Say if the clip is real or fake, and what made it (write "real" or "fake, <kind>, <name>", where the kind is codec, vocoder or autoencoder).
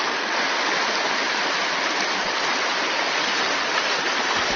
real